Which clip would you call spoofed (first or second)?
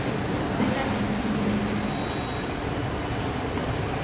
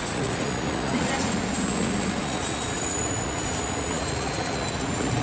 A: second